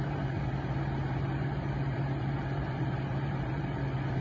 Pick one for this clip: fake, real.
fake